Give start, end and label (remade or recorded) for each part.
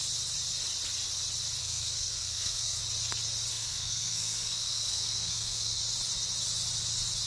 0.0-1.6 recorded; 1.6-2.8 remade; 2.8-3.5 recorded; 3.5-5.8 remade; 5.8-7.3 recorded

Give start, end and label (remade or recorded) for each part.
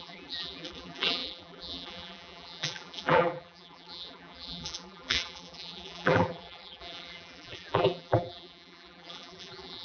0.0-9.8 remade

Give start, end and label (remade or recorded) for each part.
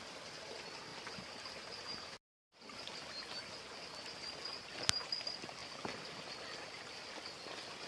0.0-7.9 recorded